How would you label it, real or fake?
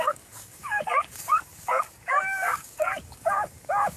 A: fake